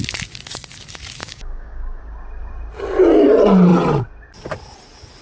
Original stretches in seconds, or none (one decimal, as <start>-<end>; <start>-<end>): 0.0-1.2; 2.0-5.2